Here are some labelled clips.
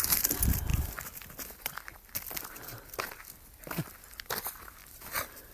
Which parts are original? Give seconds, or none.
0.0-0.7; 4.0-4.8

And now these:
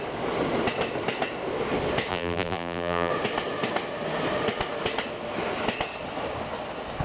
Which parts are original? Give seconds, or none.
0.0-2.1; 3.1-7.0